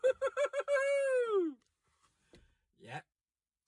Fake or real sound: real